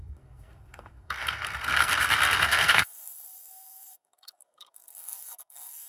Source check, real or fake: fake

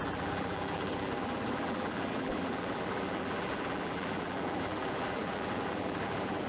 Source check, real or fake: fake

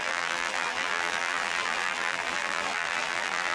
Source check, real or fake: fake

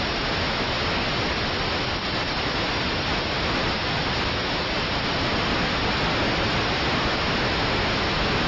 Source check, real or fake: real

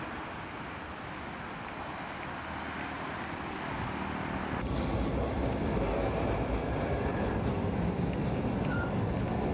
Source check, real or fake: real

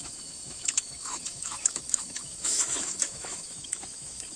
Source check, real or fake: fake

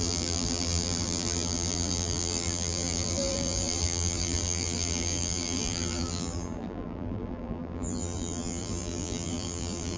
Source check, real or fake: fake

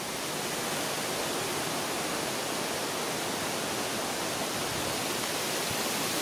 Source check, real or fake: real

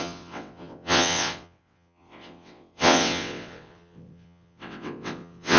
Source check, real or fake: fake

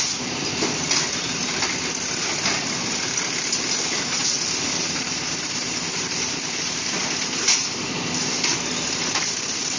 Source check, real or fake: real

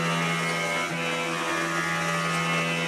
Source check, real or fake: real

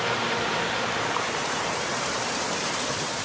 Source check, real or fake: fake